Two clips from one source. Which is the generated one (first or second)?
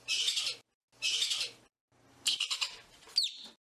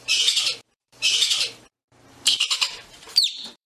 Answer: second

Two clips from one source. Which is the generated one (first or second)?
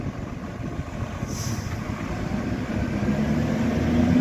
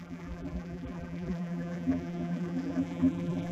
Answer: second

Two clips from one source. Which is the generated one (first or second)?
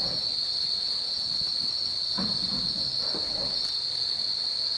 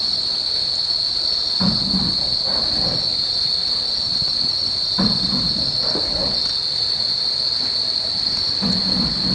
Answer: second